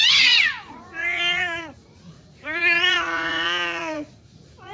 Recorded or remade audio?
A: remade